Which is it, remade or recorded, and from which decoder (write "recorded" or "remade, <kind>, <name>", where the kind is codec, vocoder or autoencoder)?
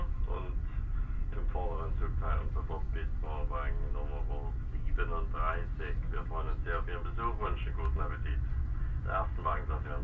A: recorded